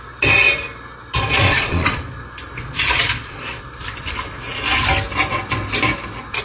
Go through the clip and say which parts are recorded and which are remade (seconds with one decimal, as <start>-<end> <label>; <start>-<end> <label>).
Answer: 0.0-1.4 recorded; 1.4-2.1 remade; 2.1-2.6 recorded; 2.6-3.6 remade; 3.6-6.4 recorded